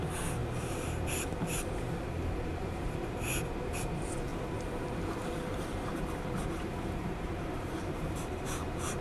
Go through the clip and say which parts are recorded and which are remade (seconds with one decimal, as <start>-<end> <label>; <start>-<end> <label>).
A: 0.0-9.0 remade